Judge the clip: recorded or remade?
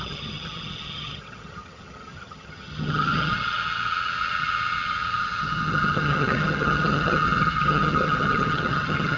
remade